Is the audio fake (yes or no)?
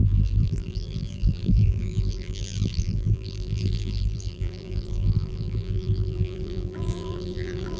yes